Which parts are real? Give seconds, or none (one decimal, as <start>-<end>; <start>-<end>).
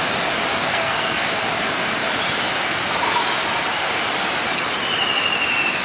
0.0-0.5; 1.3-5.8